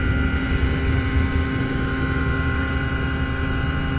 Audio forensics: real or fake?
real